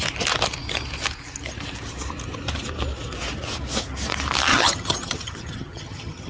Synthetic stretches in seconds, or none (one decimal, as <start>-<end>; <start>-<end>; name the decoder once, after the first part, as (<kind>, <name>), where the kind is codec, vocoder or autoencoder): 4.5-6.3 (vocoder, HiFi-GAN)